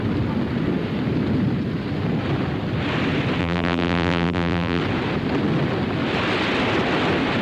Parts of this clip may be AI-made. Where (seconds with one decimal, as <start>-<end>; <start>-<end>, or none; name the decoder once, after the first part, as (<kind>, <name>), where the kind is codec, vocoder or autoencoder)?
3.4-4.8 (vocoder, BigVGAN v2)